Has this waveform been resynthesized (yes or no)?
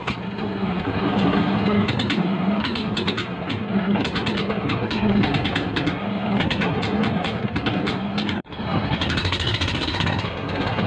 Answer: yes